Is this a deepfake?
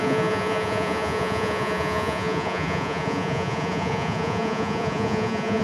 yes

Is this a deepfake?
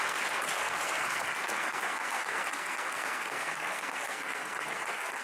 yes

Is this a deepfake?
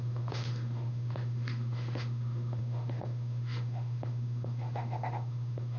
yes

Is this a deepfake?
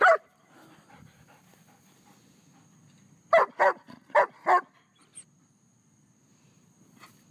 no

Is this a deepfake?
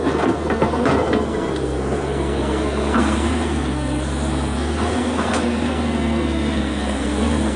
yes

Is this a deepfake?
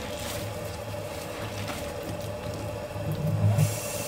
no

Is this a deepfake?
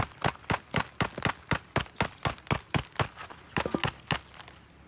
no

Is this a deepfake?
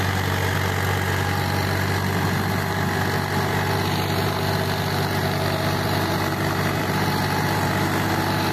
no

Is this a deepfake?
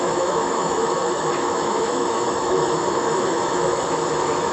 yes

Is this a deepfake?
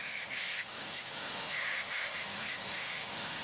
yes